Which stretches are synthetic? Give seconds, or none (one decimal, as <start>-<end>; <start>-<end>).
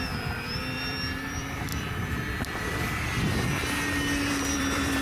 0.0-1.7; 4.3-5.0